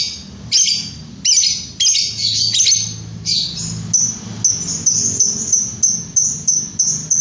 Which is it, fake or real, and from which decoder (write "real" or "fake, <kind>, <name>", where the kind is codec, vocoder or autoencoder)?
real